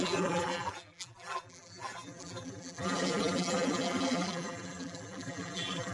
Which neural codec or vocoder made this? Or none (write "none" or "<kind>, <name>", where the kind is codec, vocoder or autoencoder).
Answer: vocoder, BigVGAN v2